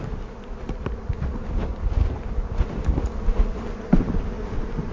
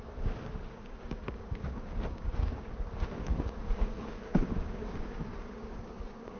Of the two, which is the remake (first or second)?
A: second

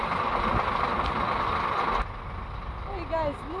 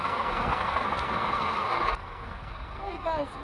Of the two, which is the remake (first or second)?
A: second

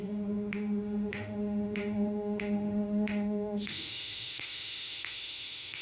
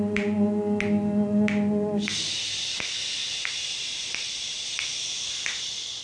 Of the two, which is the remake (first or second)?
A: first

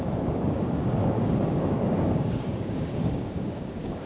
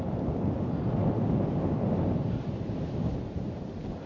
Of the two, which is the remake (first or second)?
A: first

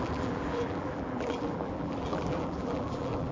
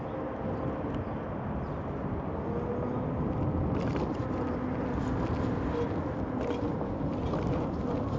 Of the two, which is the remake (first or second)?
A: first